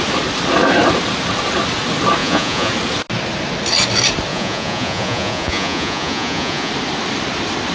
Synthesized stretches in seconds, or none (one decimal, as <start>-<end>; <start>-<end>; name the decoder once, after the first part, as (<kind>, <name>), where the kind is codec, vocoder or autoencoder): 2.2-2.7 (vocoder, Vocos); 4.3-6.7